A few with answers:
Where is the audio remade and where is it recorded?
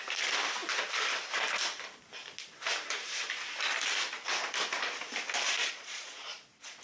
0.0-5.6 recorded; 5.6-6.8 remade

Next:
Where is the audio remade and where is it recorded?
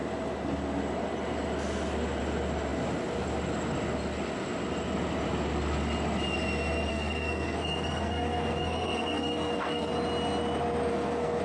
0.0-6.9 recorded; 6.9-9.9 remade; 9.9-10.9 recorded; 10.9-11.4 remade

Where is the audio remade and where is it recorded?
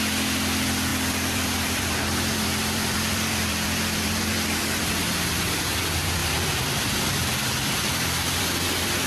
0.0-0.9 recorded; 0.9-4.6 remade; 4.6-6.2 recorded; 6.2-9.1 remade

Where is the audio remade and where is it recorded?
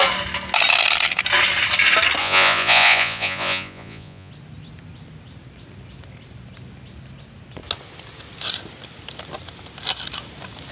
0.0-2.2 recorded; 2.2-4.3 remade; 4.3-10.7 recorded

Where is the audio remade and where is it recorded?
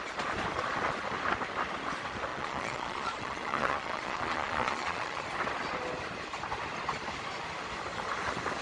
0.0-2.3 recorded; 2.3-5.2 remade; 5.2-8.6 recorded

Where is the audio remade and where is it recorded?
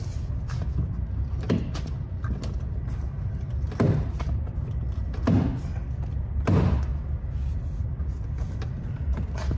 0.0-9.6 recorded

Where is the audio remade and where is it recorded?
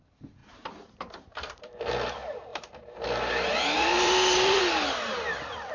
0.0-0.4 recorded; 0.4-1.8 remade; 1.8-2.5 recorded; 2.5-4.6 remade; 4.6-5.7 recorded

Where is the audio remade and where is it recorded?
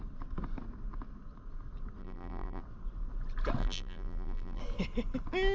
0.0-2.0 recorded; 2.0-2.6 remade; 2.6-3.6 recorded; 3.6-4.6 remade; 4.6-5.5 recorded